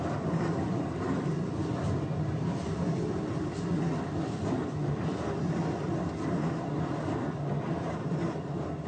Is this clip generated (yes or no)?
no